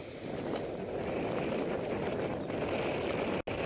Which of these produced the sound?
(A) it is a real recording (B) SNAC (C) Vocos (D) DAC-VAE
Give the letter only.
A